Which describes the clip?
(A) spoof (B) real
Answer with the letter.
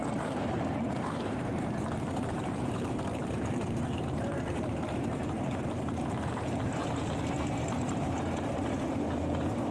A